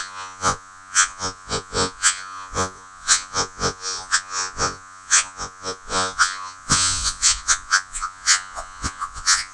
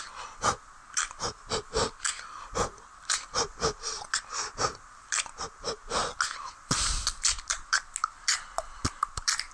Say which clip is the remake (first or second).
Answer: first